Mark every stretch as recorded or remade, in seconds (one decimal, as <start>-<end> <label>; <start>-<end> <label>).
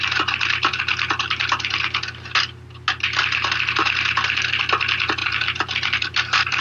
0.0-5.2 recorded; 5.2-6.6 remade